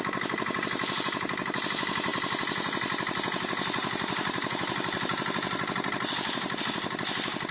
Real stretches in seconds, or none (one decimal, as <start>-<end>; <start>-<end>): 0.0-7.5